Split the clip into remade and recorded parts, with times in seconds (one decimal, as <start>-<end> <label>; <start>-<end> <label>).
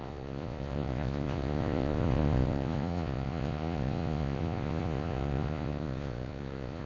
0.0-6.9 remade